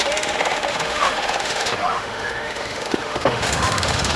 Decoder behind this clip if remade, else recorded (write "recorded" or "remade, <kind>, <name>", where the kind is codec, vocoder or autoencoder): remade, autoencoder, DAC-VAE